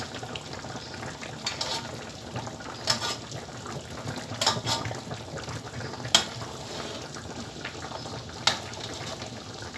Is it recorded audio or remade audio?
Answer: recorded